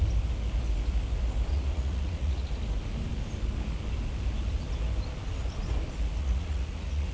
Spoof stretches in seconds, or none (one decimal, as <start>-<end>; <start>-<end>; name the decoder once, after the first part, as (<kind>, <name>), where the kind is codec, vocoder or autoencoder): 1.5-2.6 (vocoder, Vocos); 6.2-7.1